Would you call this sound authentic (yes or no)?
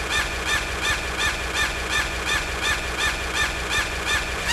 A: no